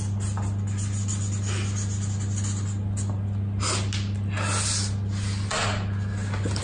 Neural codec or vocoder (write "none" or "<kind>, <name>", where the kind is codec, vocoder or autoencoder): none